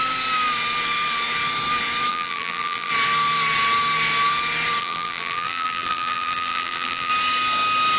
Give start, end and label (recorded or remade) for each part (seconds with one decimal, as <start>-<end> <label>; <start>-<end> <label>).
0.0-2.1 recorded; 2.1-2.9 remade; 2.9-4.8 recorded; 4.8-7.1 remade; 7.1-8.0 recorded